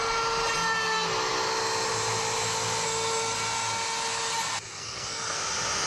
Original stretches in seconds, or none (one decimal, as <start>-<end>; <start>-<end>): 0.0-4.7; 5.4-5.9